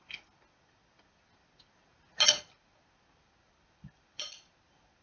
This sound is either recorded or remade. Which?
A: recorded